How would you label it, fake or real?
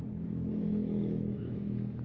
fake